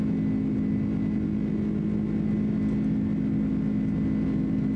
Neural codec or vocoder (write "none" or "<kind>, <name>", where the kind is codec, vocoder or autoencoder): none